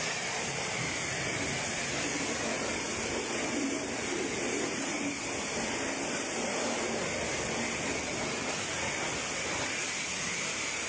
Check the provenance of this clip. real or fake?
real